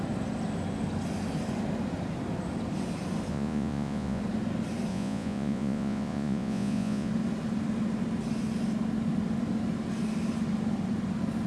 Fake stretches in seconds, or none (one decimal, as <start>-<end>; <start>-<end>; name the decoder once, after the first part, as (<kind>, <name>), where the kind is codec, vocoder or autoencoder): 3.3-4.2 (vocoder, Vocos); 4.9-7.1